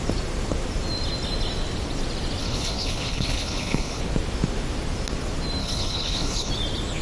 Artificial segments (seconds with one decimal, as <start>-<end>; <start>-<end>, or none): 2.4-4.0; 5.6-6.5